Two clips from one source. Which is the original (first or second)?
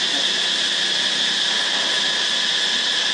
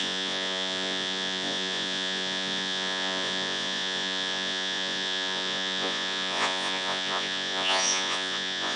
first